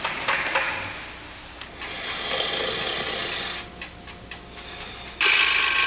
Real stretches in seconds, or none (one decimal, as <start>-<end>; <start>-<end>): 0.0-5.9